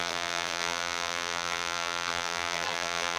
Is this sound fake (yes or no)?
yes